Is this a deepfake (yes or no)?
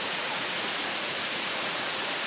yes